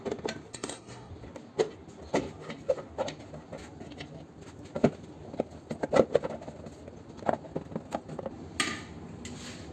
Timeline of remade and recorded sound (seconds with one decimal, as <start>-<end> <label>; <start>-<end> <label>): 0.0-0.5 recorded; 0.5-1.1 remade; 1.1-9.7 recorded